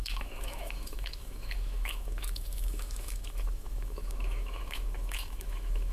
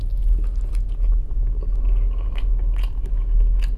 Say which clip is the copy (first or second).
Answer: first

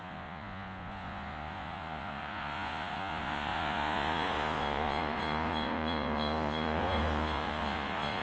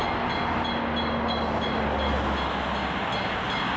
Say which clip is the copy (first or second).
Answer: first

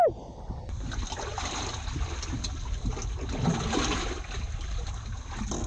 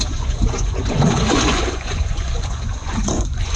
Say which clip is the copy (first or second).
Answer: second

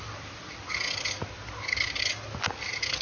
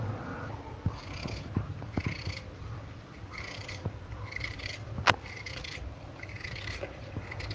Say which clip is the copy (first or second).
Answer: second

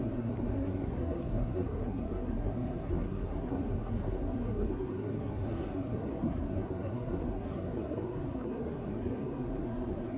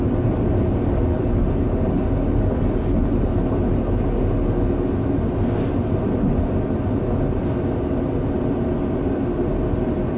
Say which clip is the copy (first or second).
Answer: first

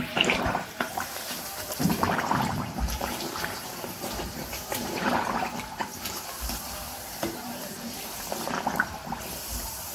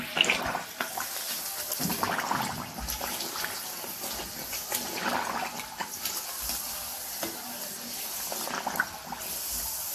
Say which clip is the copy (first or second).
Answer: first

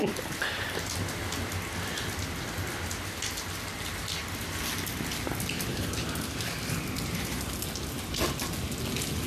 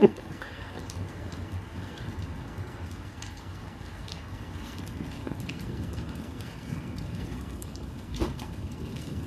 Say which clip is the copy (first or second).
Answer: second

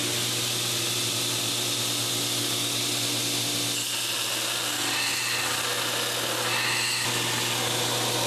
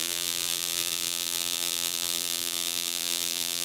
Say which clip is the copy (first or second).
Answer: second